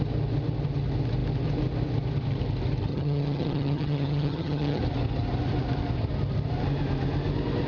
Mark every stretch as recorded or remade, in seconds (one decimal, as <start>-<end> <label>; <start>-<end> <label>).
0.0-2.9 recorded; 2.9-4.8 remade; 4.8-7.7 recorded